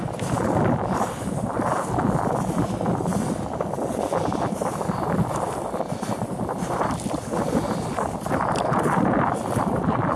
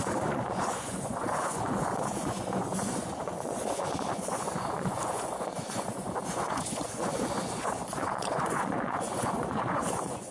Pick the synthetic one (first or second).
second